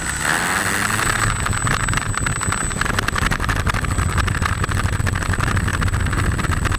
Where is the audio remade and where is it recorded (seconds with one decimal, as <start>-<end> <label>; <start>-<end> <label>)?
0.0-6.8 recorded